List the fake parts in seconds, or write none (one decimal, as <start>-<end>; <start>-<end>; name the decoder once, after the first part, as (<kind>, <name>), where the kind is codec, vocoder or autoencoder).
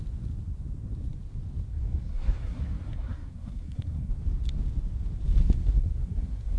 1.7-4.1 (codec, SNAC); 5.4-6.6